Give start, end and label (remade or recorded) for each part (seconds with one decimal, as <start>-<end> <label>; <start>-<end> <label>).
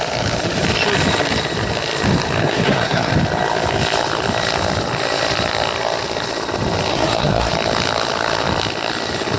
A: 0.0-2.4 recorded; 2.4-3.1 remade; 3.1-6.9 recorded; 6.9-7.5 remade; 7.5-9.4 recorded